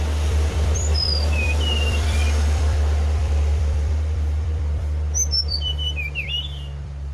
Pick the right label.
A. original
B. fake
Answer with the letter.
B